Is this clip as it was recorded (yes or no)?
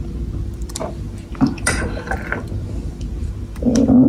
no